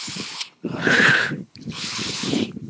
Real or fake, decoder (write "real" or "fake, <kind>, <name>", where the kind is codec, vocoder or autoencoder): fake, codec, HILCodec